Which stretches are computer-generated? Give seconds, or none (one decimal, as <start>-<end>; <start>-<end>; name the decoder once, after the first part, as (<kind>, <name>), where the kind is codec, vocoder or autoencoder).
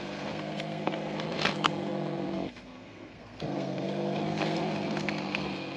0.0-5.8 (codec, SNAC)